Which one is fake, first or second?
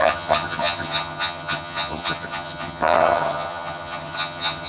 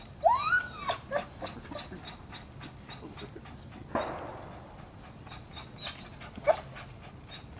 first